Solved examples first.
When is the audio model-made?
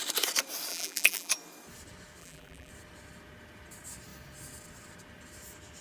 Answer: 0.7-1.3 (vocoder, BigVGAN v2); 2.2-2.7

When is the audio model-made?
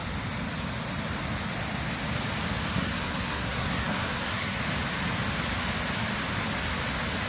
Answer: 2.7-4.6 (codec, SNAC)